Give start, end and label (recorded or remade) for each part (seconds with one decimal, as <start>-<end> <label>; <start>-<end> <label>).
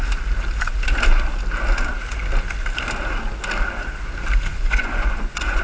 0.0-4.5 recorded; 4.5-5.6 remade